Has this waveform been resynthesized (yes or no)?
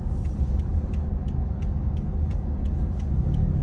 yes